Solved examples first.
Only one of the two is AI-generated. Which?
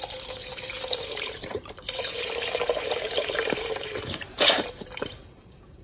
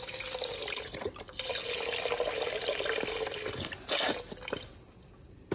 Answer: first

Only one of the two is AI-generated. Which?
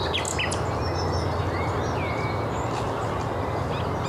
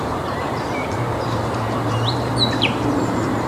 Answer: second